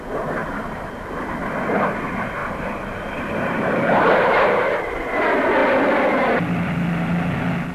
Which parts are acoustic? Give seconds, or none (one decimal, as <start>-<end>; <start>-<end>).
0.0-0.4; 0.9-2.4; 4.9-7.7